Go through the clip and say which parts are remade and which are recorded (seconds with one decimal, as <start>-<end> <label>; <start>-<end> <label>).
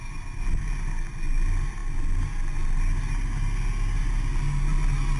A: 0.0-5.2 recorded